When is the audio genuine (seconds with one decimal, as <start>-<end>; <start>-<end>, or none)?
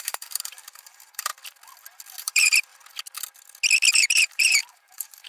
1.3-2.2; 2.7-3.9